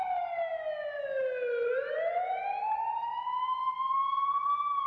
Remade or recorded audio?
recorded